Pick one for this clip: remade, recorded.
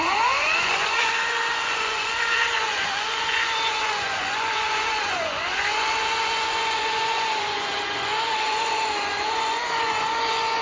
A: remade